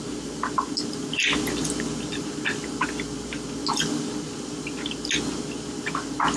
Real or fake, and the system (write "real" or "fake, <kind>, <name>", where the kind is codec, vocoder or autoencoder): real